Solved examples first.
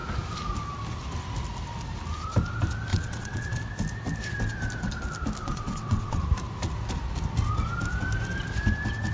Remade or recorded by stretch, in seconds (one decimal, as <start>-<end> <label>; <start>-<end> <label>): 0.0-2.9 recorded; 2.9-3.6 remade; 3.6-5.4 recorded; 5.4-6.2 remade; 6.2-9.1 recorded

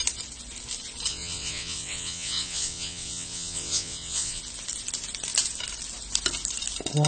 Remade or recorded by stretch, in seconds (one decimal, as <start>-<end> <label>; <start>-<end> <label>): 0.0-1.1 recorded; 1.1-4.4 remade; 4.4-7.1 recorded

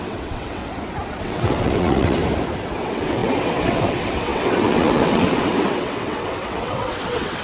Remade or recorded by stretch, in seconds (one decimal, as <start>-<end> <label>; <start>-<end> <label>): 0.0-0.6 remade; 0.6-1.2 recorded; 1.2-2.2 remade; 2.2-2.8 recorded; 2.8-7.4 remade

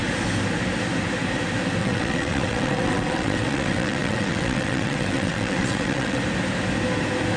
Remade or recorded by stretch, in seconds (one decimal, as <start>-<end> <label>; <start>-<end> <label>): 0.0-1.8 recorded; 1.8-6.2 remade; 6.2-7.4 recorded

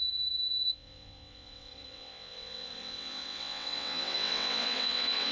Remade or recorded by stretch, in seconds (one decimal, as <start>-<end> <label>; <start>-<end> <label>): 0.0-5.3 remade